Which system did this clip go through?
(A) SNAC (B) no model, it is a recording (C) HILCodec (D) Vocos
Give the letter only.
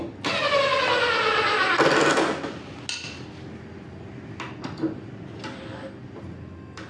B